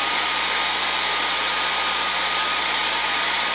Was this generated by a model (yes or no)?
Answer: yes